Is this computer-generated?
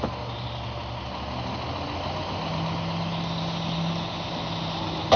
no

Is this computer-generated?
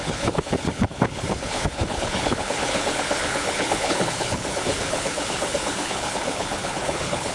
yes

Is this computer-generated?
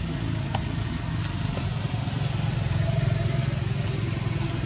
no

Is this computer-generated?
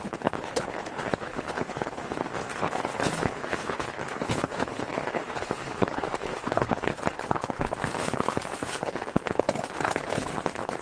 yes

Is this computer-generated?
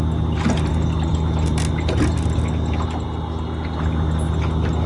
no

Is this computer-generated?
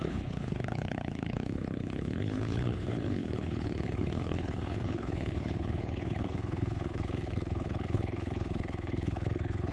yes